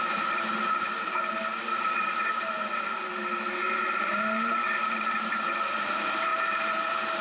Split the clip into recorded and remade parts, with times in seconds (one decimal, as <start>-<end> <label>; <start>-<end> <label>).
0.0-7.2 remade